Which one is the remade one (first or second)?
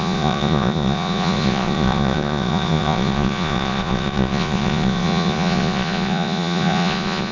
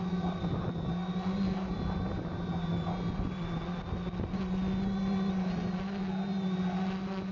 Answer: first